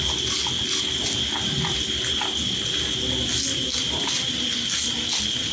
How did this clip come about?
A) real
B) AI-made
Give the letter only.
A